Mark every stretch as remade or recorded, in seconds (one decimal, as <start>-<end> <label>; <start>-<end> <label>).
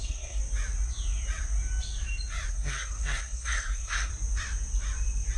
0.0-0.4 remade; 0.4-2.5 recorded; 2.5-4.1 remade; 4.1-5.4 recorded